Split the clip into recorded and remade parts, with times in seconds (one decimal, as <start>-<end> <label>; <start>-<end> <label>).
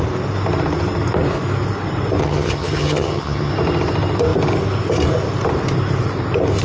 0.0-2.2 recorded; 2.2-3.5 remade; 3.5-6.6 recorded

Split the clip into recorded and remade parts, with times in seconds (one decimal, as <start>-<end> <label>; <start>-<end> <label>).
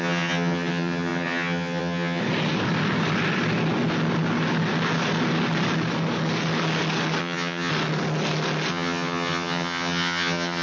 0.0-2.2 remade; 2.2-7.2 recorded; 7.2-7.7 remade; 7.7-8.7 recorded; 8.7-10.6 remade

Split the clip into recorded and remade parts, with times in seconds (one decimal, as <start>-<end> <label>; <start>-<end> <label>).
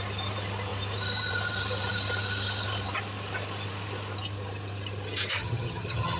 0.0-5.4 recorded; 5.4-6.2 remade